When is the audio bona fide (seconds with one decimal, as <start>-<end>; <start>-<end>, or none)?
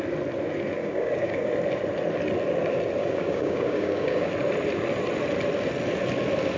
0.0-0.8; 1.5-3.0; 4.3-6.6